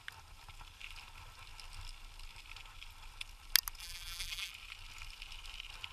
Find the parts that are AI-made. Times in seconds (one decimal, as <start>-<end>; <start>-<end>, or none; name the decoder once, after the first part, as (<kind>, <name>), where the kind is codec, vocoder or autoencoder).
3.8-4.5 (vocoder, BigVGAN v2)